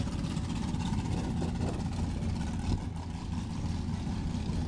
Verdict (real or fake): real